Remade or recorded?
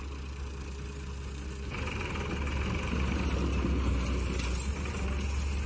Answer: recorded